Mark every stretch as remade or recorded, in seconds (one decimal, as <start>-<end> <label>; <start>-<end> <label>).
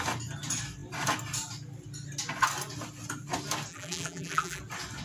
0.0-3.7 recorded; 3.7-4.6 remade; 4.6-5.0 recorded